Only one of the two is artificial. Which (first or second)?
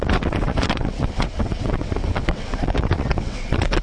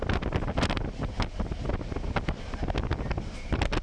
first